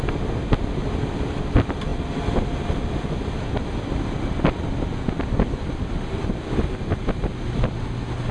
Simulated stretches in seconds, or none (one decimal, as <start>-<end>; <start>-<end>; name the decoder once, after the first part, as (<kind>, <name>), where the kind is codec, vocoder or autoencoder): none